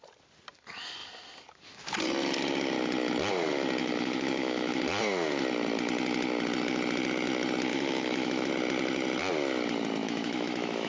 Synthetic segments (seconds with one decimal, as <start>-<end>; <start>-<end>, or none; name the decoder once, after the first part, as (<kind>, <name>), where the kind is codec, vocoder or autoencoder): 3.8-4.8 (autoencoder, DAC-VAE); 7.7-8.5; 10.0-10.9